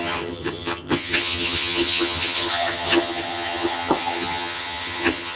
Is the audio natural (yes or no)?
no